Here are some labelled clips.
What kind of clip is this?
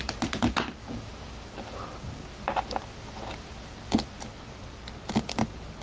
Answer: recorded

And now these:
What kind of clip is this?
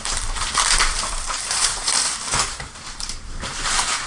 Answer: remade